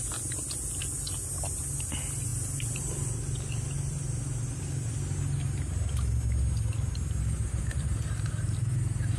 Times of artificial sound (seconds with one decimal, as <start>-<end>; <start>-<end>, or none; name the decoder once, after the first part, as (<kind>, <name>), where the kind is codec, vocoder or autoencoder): none